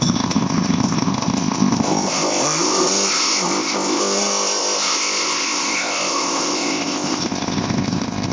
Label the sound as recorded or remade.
remade